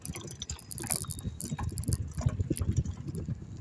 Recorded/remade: recorded